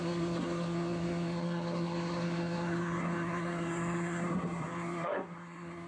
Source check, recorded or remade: remade